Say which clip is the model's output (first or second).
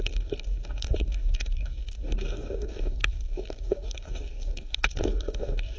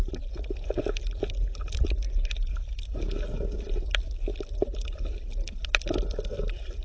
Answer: first